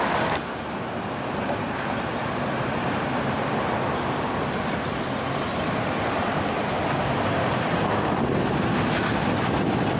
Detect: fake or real real